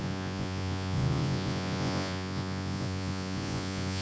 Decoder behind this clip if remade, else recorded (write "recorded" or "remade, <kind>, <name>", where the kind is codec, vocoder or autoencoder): remade, vocoder, Vocos